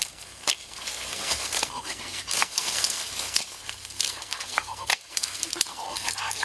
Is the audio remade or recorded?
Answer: remade